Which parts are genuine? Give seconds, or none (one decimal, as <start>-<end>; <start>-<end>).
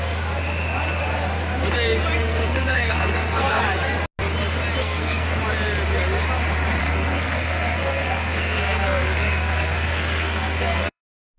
0.0-2.2; 3.6-4.8; 5.4-6.8; 11.0-11.4